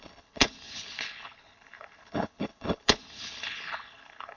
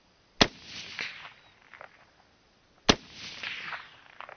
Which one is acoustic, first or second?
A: second